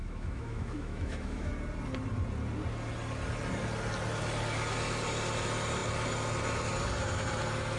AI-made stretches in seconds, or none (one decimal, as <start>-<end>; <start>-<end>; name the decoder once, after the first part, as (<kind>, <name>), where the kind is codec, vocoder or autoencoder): 0.0-1.5 (autoencoder, DAC-VAE)